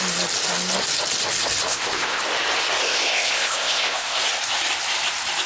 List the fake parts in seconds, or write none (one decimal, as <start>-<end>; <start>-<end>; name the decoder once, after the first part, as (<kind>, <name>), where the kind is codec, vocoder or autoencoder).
1.7-2.2 (codec, ZipCodec); 2.8-4.2